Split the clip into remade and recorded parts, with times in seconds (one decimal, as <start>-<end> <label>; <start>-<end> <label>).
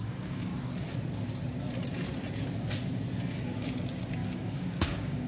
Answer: 0.0-0.5 remade; 0.5-3.4 recorded; 3.4-5.3 remade